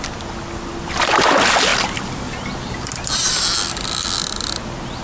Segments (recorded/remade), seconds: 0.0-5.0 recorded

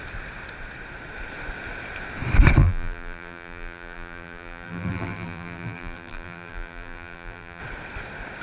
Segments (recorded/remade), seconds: 0.0-2.6 recorded; 2.6-7.6 remade; 7.6-8.4 recorded

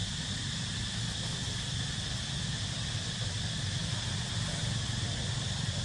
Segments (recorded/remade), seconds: 0.0-3.5 recorded; 3.5-5.8 remade

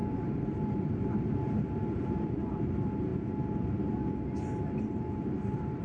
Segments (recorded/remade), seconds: 0.0-3.1 remade; 3.1-4.8 recorded; 4.8-5.8 remade